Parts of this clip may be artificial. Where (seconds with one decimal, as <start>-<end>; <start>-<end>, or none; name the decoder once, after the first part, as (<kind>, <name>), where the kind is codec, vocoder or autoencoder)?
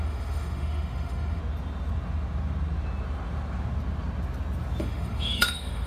0.0-1.4 (autoencoder, DAC-VAE); 4.8-5.9